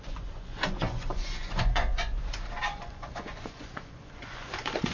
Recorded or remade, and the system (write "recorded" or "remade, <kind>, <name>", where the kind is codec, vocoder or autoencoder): remade, vocoder, Vocos